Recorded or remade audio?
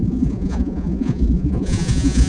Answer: remade